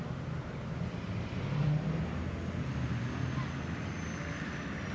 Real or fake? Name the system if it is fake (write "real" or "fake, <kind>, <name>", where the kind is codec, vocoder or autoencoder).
real